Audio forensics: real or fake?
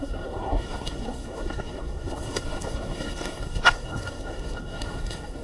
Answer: fake